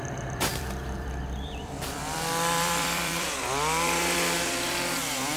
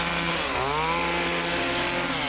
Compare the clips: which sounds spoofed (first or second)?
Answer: first